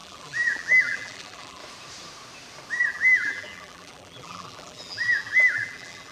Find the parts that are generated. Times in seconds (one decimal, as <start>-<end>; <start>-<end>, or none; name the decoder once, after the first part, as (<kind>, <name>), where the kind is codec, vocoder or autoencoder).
0.0-1.6 (vocoder, BigVGAN v2); 2.9-6.1